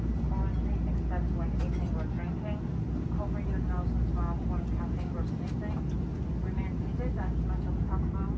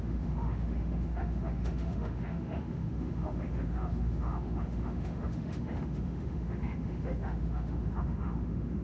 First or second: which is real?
first